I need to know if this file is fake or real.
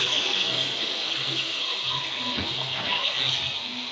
fake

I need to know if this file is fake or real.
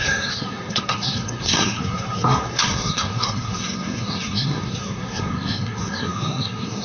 fake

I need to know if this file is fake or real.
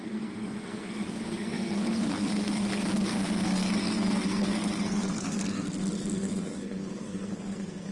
fake